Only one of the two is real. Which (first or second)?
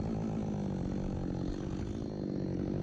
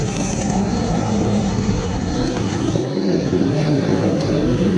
first